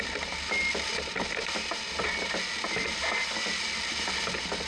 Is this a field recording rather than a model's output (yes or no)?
yes